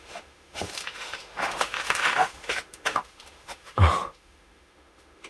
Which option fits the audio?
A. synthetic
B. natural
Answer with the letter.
A